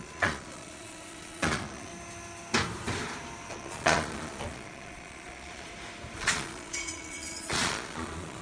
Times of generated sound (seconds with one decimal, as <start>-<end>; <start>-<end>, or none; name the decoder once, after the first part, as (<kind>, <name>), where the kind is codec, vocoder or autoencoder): 0.0-1.9 (vocoder, Vocos); 3.5-5.7; 6.2-8.4